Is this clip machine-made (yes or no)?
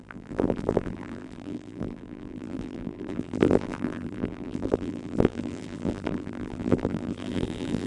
yes